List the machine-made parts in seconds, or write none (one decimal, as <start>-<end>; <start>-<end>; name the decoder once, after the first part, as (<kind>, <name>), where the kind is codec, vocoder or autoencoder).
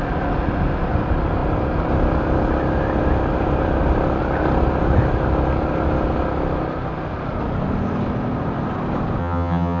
9.2-9.8 (vocoder, HiFi-GAN)